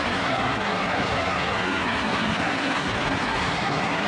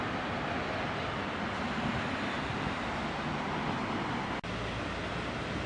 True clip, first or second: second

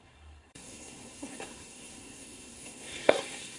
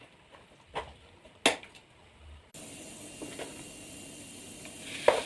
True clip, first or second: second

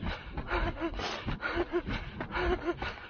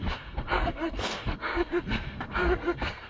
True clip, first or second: first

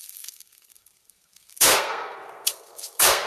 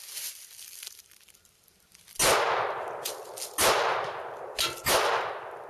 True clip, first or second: second